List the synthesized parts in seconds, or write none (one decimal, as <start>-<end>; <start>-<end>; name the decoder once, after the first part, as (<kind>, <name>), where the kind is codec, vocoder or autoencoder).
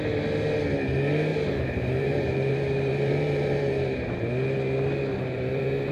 1.3-4.3 (vocoder, BigVGAN v2); 5.1-5.9